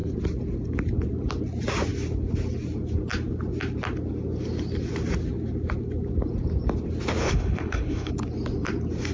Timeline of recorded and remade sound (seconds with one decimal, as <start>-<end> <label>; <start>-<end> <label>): 0.0-7.2 recorded; 7.2-8.1 remade; 8.1-9.1 recorded